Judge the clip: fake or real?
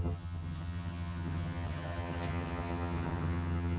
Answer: fake